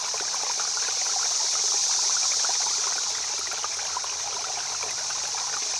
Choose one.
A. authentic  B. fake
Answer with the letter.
A